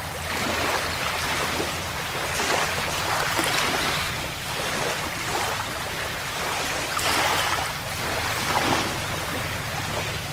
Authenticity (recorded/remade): remade